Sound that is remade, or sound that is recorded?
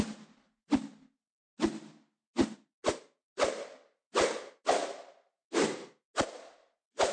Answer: recorded